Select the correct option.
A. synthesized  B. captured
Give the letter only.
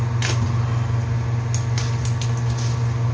B